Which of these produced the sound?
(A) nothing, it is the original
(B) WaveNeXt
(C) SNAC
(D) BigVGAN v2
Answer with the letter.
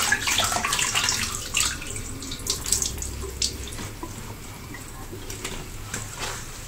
D